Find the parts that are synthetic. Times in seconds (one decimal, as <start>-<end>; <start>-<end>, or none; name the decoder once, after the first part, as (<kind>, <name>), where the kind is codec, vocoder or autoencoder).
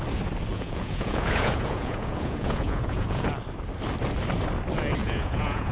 0.5-3.3 (vocoder, Vocos); 5.0-5.7